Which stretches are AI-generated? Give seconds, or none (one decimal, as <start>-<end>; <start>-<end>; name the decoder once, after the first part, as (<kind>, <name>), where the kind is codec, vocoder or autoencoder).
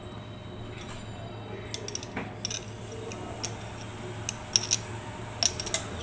none